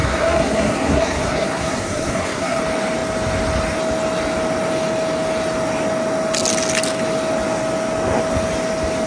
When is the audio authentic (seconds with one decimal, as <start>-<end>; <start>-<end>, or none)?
2.6-9.1